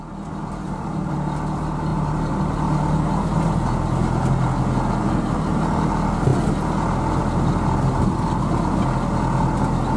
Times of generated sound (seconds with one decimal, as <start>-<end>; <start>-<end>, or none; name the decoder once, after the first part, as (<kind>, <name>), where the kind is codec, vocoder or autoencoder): 0.4-1.1 (vocoder, BigVGAN v2); 1.9-2.4